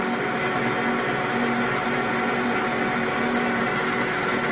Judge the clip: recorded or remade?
recorded